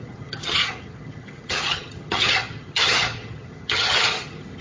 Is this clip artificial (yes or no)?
yes